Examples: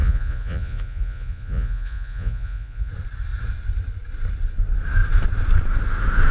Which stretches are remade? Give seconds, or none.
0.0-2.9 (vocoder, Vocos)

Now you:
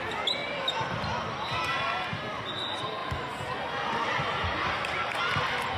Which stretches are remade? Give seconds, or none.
none

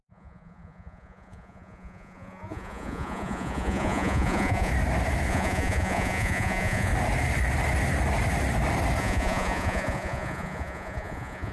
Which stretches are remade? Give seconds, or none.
0.0-4.7 (vocoder, Vocos); 5.3-6.9; 9.0-11.5

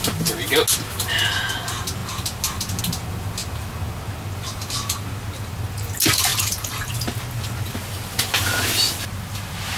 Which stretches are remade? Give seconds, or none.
6.3-6.9 (vocoder, BigVGAN v2)

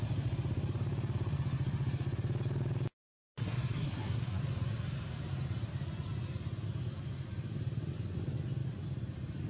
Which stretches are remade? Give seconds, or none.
3.4-4.4 (codec, SNAC)

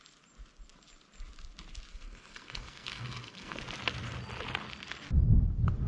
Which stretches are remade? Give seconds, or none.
1.9-3.6 (codec, SNAC)

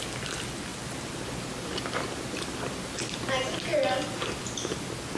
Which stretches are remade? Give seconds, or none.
none

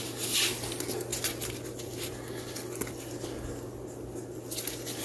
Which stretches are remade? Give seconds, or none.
none